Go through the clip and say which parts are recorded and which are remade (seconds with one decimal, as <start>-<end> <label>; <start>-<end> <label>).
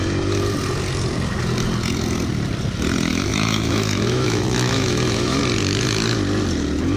0.0-3.1 recorded; 3.1-5.4 remade; 5.4-7.0 recorded